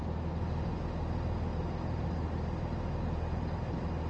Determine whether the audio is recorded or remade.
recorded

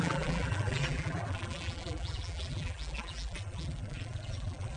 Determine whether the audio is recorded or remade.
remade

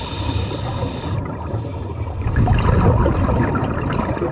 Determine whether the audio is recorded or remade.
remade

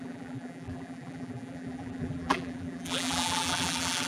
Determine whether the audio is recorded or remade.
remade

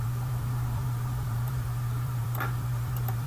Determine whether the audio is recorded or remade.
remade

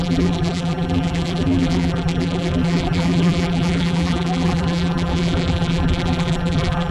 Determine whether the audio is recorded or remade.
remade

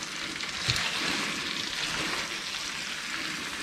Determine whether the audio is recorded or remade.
recorded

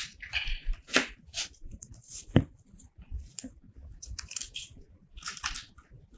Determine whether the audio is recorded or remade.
recorded